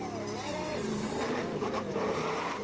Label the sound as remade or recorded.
remade